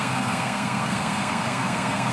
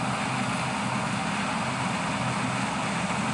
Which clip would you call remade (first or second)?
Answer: first